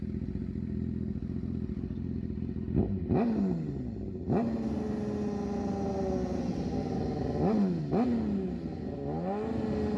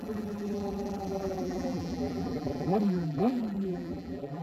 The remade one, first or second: second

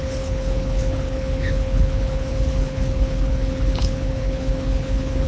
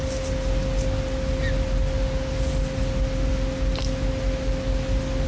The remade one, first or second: first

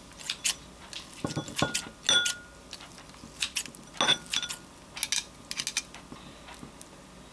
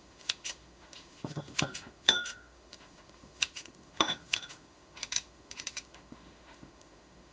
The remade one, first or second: second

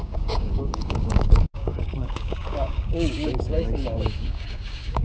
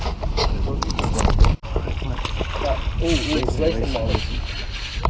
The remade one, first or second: first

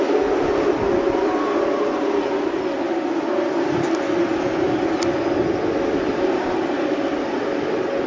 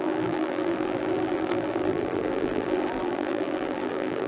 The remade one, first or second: second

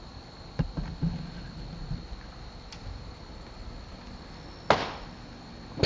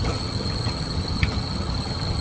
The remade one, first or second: second